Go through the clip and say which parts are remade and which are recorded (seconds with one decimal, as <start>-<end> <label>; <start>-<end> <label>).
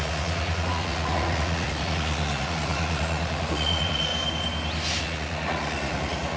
0.0-4.1 remade; 4.1-5.0 recorded; 5.0-6.4 remade